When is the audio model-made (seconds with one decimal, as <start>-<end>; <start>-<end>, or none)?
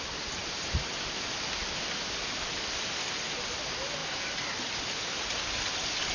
0.4-0.9; 4.0-4.8